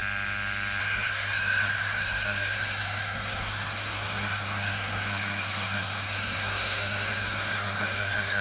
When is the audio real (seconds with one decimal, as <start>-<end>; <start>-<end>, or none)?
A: 0.0-0.8